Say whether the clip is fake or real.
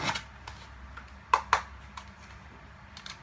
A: real